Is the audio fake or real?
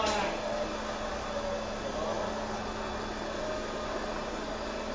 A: real